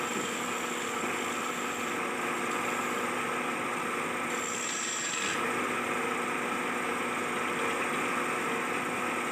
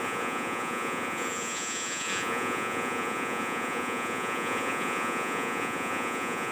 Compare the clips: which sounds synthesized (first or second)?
second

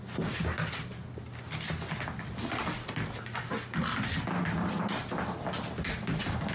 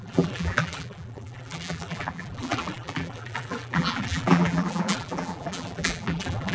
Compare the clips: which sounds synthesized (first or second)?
second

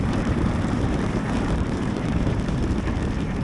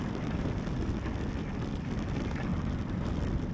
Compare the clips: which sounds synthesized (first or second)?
first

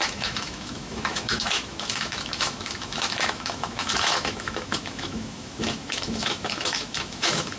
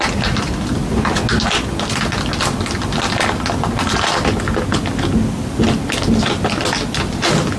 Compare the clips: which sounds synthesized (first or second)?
first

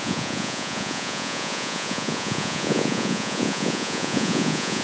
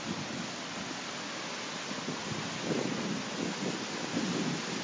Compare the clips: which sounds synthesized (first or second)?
first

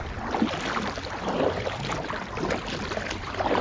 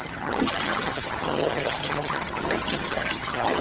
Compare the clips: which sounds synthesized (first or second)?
second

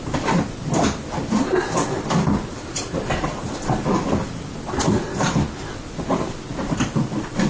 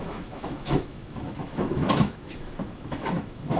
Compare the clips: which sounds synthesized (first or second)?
second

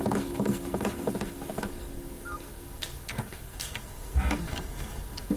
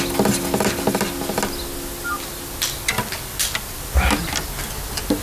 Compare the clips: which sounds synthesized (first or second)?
first